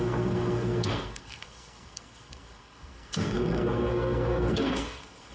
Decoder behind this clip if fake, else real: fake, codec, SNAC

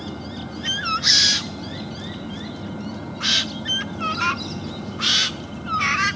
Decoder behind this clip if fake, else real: real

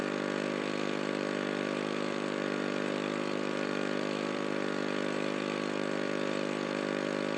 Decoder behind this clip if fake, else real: fake, vocoder, BigVGAN v2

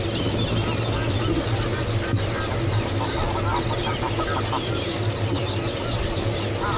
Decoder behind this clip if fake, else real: real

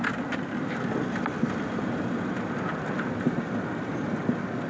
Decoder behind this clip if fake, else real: real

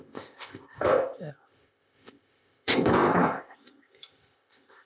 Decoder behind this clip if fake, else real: fake, codec, ZipCodec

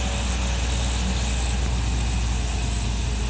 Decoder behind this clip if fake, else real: real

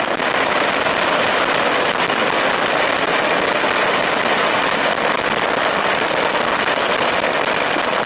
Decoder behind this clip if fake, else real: real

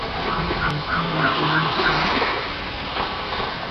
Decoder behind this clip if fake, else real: fake, codec, SNAC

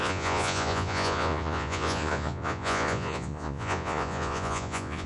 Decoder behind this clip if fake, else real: fake, vocoder, Vocos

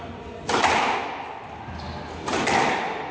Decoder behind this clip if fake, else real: real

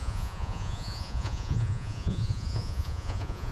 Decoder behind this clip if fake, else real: fake, vocoder, Vocos